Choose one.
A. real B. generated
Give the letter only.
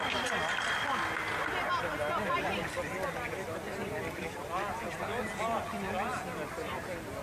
A